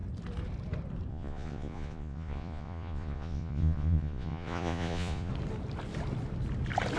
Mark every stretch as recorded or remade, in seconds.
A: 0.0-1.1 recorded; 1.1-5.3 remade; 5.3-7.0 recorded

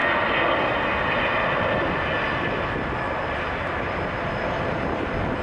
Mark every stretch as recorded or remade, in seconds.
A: 0.0-5.4 recorded

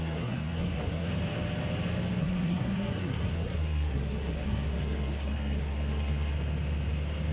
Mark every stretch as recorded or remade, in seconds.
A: 0.0-1.1 remade; 1.1-2.2 recorded; 2.2-6.3 remade; 6.3-7.3 recorded

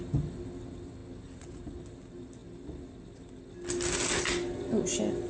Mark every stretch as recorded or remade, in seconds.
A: 0.0-5.3 recorded

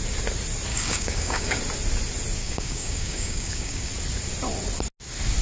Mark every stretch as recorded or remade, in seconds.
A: 0.0-0.7 recorded; 0.7-1.6 remade; 1.6-2.4 recorded; 2.4-3.9 remade; 3.9-5.4 recorded

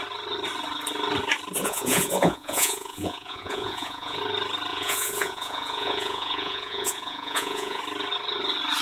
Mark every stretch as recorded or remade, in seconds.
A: 0.0-1.6 recorded; 1.6-4.2 remade; 4.2-4.7 recorded; 4.7-7.8 remade; 7.8-8.8 recorded